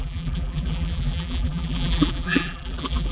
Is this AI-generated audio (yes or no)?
yes